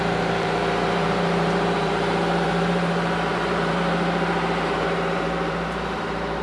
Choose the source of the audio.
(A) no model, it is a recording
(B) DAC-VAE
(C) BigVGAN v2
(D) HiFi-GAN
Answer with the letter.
C